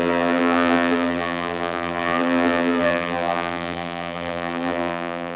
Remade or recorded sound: remade